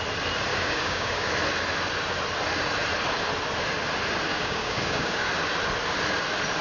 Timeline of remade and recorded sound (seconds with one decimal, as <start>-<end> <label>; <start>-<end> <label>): 0.0-0.5 recorded; 0.5-1.3 remade; 1.3-4.3 recorded; 4.3-5.3 remade; 5.3-6.6 recorded